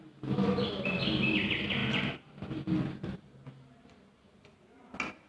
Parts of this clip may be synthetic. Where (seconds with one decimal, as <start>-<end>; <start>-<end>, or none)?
none